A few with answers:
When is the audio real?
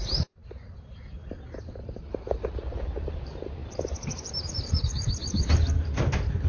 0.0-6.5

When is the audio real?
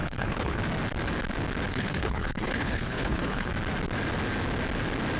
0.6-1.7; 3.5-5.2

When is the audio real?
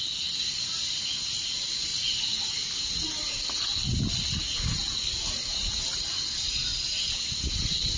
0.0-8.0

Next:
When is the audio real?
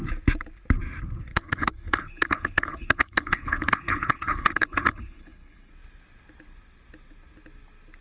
0.0-1.3; 5.7-8.0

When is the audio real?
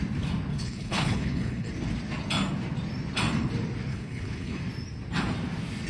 0.0-0.5; 1.7-3.9; 4.6-5.9